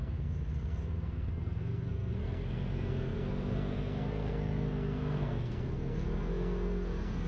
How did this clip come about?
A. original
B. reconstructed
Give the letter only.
B